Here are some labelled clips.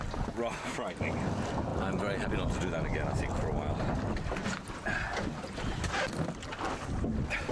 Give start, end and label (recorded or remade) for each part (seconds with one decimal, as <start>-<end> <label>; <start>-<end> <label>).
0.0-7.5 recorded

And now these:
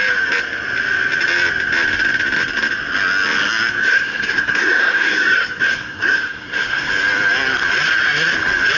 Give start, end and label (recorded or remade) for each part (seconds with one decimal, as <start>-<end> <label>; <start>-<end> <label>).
0.0-3.8 recorded; 3.8-6.9 remade; 6.9-8.8 recorded

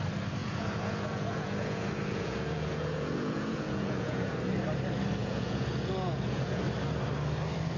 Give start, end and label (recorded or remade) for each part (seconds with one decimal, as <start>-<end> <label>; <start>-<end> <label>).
0.0-0.4 recorded; 0.4-4.3 remade; 4.3-5.2 recorded; 5.2-6.6 remade; 6.6-7.8 recorded

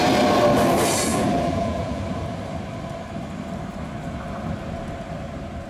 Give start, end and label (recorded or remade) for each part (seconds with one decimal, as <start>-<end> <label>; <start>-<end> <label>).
0.0-1.1 recorded; 1.1-2.0 remade; 2.0-5.7 recorded

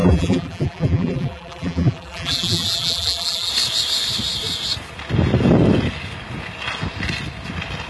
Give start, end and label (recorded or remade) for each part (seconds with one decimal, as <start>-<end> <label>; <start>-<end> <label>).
0.0-3.5 remade; 3.5-7.9 recorded

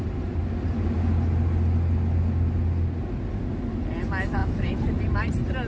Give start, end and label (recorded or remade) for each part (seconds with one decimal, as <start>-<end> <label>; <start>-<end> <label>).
0.0-5.7 recorded

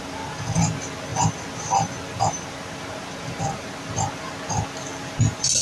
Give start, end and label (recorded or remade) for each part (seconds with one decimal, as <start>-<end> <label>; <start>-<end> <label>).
0.0-5.6 recorded